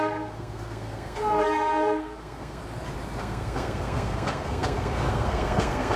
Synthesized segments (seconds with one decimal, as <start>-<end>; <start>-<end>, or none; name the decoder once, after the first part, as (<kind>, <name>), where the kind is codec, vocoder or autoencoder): 0.0-2.6 (codec, SNAC); 3.2-6.0